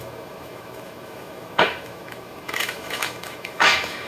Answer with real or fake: fake